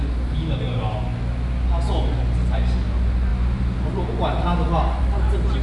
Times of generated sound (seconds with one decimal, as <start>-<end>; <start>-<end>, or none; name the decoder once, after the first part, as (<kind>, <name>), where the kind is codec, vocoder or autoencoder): none